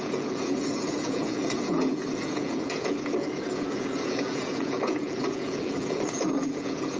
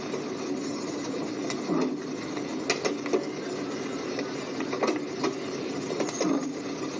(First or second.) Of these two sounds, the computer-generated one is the first